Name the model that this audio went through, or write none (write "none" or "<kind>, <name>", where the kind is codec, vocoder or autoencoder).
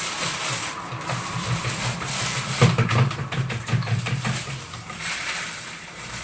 vocoder, BigVGAN v2